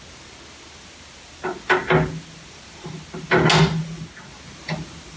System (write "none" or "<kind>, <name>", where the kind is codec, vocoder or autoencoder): none